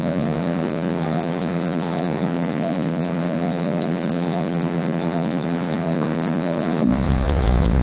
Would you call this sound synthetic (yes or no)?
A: yes